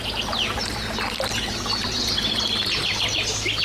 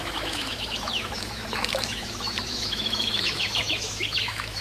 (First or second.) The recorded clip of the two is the first